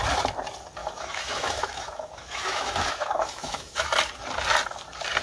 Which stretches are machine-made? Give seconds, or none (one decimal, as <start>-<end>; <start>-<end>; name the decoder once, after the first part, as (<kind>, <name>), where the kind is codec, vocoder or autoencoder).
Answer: 0.8-3.9 (autoencoder, DAC-VAE)